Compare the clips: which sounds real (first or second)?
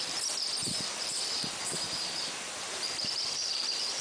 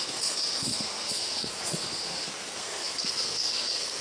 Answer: first